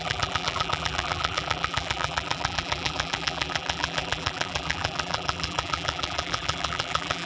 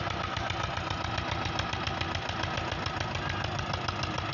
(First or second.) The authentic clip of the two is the second